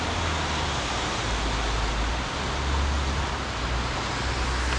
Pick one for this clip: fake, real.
real